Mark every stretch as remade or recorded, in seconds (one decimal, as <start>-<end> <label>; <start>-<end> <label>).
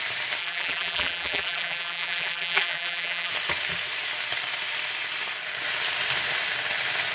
0.0-0.4 recorded; 0.4-3.3 remade; 3.3-7.1 recorded